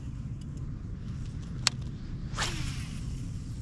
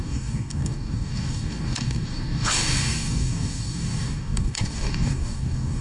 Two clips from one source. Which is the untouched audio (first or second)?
first